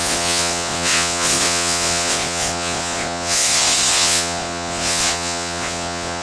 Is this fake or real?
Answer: fake